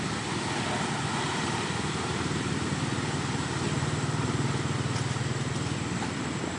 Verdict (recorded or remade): recorded